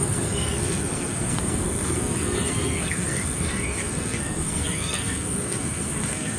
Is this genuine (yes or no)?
no